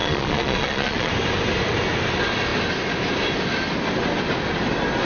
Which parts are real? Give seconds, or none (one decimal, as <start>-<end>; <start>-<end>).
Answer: 1.1-5.0